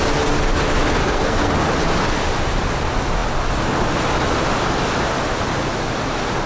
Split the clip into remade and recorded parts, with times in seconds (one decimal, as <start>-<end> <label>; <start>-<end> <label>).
0.0-1.0 recorded; 1.0-1.5 remade; 1.5-6.5 recorded